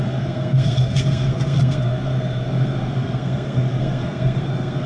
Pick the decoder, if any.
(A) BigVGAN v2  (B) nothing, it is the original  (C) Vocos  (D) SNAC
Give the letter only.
D